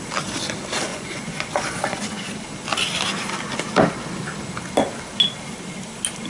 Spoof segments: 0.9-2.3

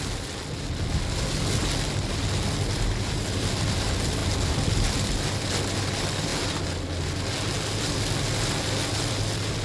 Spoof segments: none

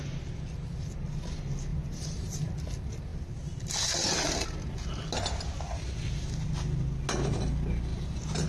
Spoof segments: 1.7-2.5; 7.9-8.5

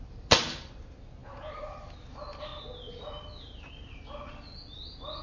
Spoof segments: none

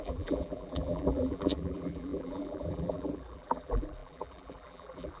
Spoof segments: 0.0-5.2

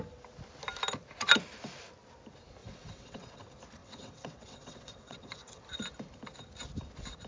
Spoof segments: 2.6-3.4; 3.8-5.6

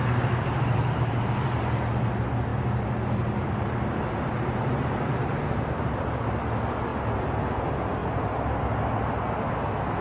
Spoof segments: 0.0-1.6; 2.5-6.2; 8.0-8.6